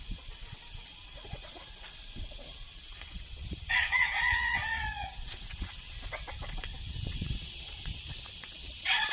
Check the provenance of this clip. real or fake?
fake